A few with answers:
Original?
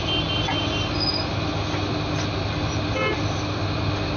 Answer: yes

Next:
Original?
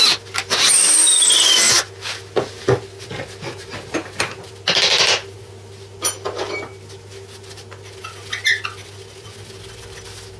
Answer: yes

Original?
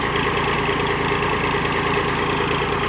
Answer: yes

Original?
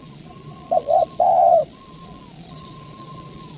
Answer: no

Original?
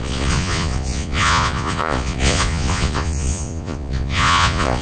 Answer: no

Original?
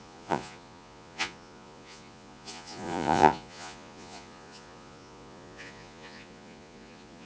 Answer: no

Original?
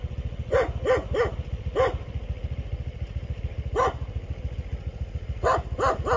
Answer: yes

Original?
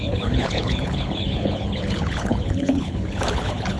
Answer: no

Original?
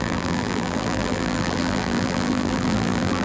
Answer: no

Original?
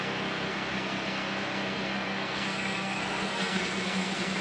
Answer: no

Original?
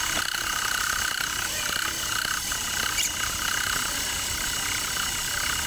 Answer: no